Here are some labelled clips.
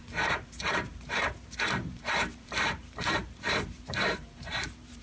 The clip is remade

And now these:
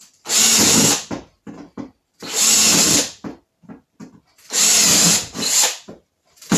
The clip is recorded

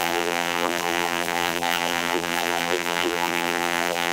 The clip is remade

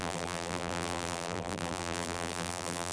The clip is remade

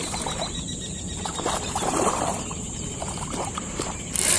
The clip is remade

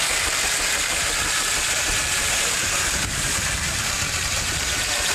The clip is remade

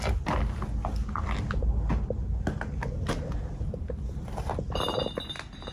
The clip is recorded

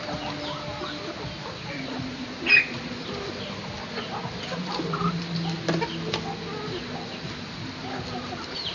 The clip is recorded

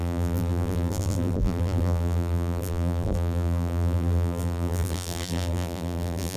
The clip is remade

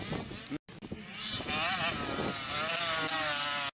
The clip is recorded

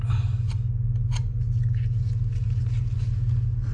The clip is recorded